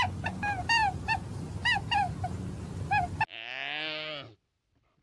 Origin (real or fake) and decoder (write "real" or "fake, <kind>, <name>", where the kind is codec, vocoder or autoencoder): real